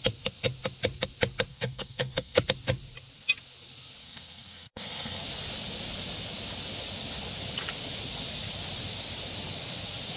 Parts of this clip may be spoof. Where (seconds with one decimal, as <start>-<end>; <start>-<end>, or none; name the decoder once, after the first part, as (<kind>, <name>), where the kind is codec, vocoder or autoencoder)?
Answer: 1.5-2.4 (codec, SNAC); 4.0-5.2